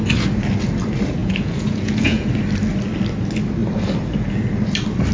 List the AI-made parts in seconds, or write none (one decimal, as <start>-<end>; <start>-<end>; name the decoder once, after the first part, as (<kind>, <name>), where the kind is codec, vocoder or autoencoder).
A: 1.2-2.3 (vocoder, Vocos)